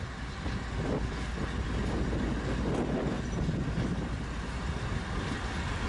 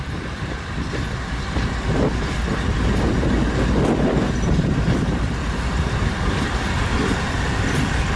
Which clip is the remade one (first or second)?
second